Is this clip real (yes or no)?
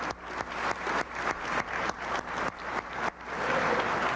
yes